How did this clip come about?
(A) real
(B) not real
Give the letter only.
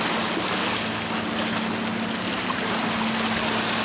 A